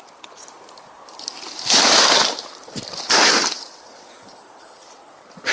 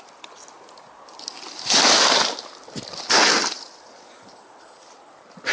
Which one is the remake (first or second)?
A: first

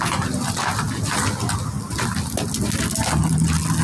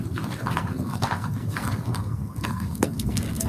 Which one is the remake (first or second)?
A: second